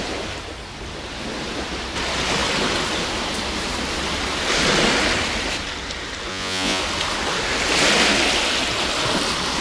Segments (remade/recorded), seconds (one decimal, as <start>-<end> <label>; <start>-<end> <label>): 0.0-6.3 recorded; 6.3-6.8 remade; 6.8-9.6 recorded

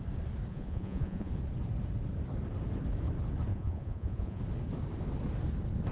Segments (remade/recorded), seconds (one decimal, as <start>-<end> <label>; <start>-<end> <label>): 0.0-0.5 recorded; 0.5-1.3 remade; 1.3-3.5 recorded; 3.5-4.4 remade; 4.4-5.9 recorded